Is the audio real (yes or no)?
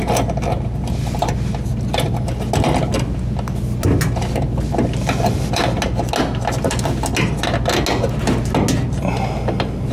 yes